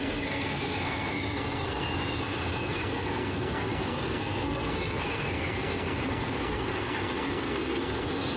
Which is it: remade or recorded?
remade